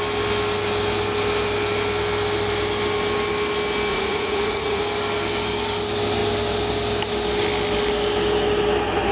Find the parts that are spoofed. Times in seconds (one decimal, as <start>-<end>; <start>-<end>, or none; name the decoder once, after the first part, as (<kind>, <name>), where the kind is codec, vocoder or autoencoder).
3.9-4.8 (vocoder, Vocos)